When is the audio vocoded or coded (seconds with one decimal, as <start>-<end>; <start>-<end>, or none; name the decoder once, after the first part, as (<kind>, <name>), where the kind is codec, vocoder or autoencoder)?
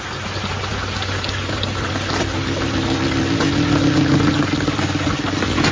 none